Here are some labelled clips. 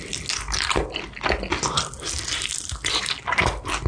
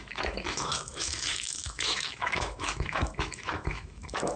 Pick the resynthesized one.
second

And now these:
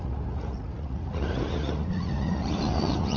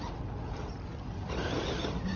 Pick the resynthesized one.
first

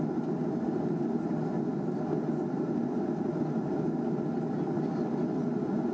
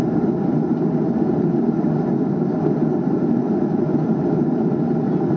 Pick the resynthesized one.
second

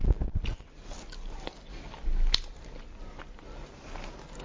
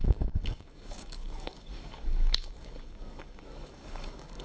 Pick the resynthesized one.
second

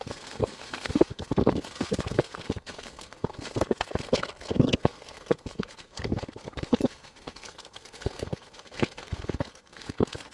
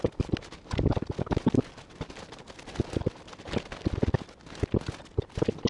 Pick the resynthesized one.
first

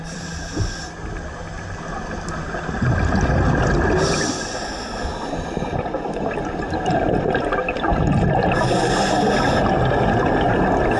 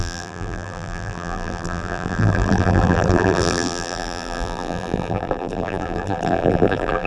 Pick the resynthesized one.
second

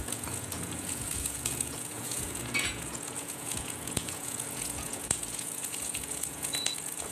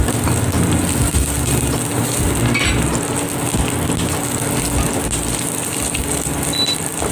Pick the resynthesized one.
first